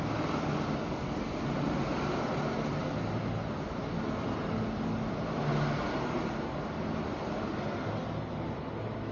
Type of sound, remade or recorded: recorded